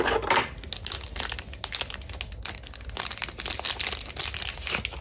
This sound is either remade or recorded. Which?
recorded